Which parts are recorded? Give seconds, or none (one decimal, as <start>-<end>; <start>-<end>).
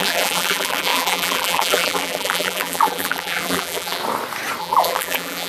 4.0-4.6